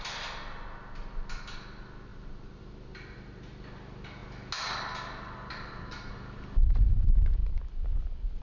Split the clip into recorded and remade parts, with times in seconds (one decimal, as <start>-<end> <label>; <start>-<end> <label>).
0.0-2.1 recorded; 2.1-2.6 remade; 2.6-6.6 recorded; 6.6-7.3 remade; 7.3-8.4 recorded